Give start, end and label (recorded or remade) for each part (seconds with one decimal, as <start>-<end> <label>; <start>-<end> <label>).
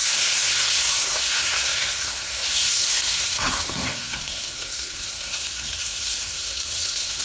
0.0-7.2 remade